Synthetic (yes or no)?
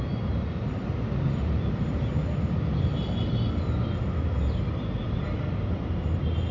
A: no